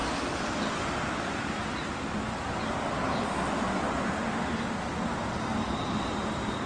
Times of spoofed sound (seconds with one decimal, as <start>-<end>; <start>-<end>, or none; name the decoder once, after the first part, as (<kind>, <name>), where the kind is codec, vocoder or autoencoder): 5.5-6.7 (vocoder, BigVGAN v2)